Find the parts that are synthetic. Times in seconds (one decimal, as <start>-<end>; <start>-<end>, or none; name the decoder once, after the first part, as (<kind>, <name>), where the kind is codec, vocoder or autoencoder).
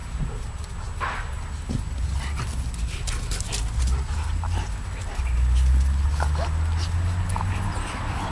none